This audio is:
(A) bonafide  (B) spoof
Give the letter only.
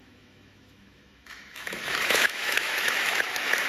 B